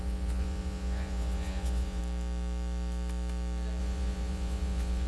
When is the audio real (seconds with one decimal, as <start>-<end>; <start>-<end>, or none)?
2.0-3.8